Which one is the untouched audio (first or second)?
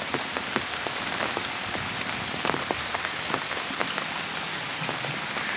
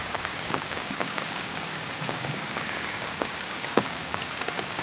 first